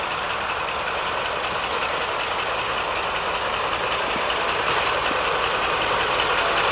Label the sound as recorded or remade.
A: recorded